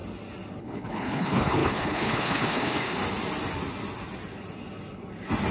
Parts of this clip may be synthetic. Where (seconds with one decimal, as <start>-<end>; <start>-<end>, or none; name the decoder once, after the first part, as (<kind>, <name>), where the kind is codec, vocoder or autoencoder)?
0.6-3.0 (codec, HILCodec)